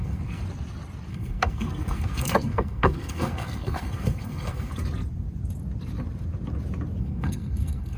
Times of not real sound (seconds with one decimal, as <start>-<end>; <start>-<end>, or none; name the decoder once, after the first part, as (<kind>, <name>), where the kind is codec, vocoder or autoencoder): 0.0-0.4 (codec, SNAC); 1.1-4.7; 7.0-8.0